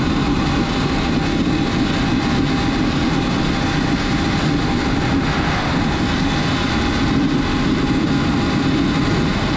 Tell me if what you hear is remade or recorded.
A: recorded